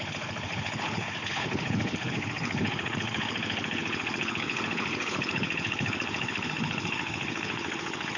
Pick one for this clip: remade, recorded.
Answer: remade